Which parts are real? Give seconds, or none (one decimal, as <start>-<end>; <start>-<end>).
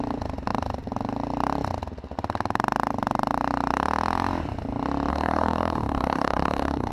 0.0-5.1